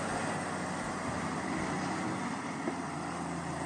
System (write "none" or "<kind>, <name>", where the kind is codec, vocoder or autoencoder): none